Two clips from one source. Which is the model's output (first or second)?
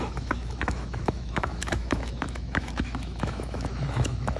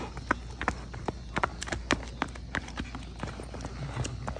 first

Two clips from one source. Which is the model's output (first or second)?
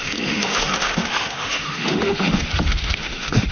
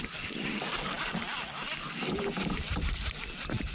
first